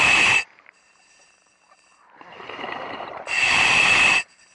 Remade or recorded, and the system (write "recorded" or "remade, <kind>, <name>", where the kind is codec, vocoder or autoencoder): remade, vocoder, BigVGAN v2